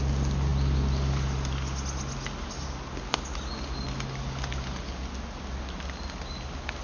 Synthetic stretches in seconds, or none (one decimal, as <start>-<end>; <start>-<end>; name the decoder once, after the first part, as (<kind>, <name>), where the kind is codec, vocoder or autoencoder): none